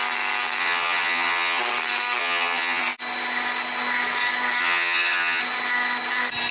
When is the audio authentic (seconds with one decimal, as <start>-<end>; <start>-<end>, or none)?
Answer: 0.0-0.6; 1.6-2.2; 2.8-4.6; 5.4-6.5